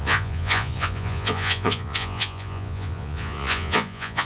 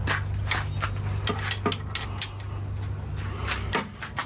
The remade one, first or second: first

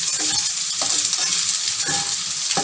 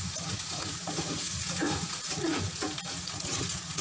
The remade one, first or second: second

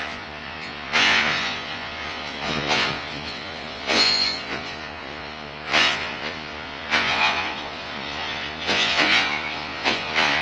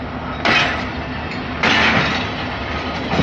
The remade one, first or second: first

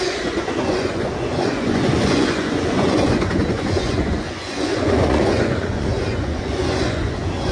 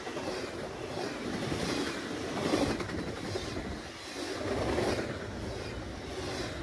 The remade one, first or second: first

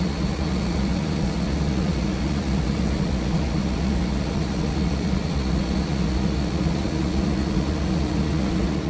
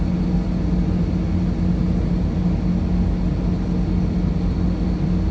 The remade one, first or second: first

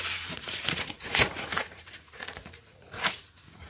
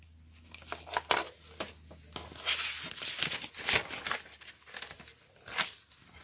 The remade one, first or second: first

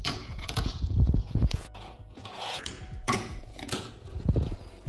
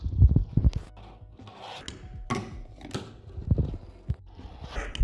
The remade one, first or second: first